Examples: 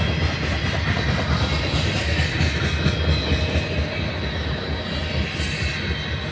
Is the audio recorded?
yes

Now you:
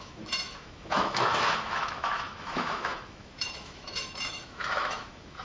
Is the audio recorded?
no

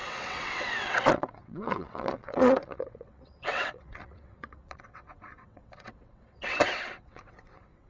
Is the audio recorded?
no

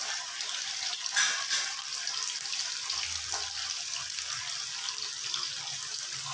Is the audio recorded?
yes